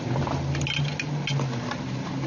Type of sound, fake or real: real